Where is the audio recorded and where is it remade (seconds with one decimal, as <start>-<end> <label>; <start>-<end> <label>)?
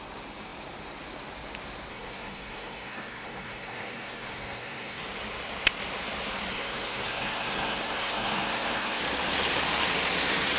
0.0-1.9 recorded; 1.9-5.0 remade; 5.0-6.5 recorded; 6.5-9.0 remade; 9.0-10.6 recorded